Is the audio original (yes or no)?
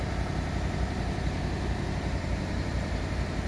no